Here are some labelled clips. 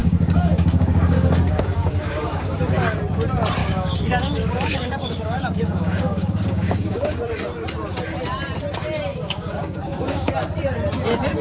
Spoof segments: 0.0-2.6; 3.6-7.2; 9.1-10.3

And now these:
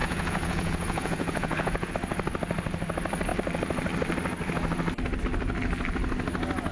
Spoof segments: 0.0-1.9

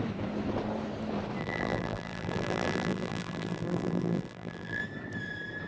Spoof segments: 1.4-4.8

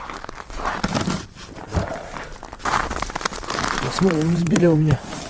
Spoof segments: 0.0-2.3; 2.9-5.3

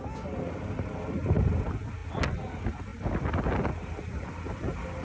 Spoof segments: none

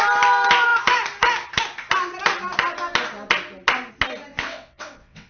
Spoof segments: 4.3-5.3

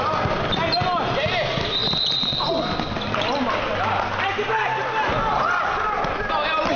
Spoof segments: none